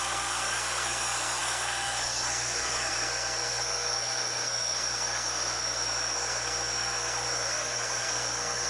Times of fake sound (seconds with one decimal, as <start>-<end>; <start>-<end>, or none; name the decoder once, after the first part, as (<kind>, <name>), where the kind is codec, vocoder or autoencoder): 0.0-8.7 (codec, SNAC)